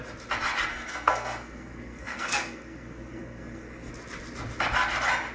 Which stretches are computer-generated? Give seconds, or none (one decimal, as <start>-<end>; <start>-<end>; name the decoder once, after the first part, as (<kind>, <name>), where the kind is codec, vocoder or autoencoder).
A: 0.7-3.9 (codec, SNAC)